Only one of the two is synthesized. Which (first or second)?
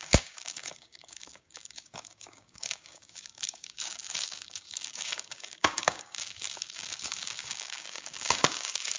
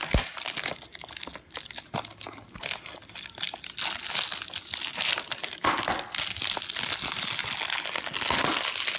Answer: first